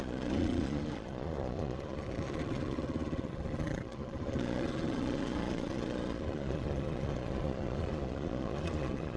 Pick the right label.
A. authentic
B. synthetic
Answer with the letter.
B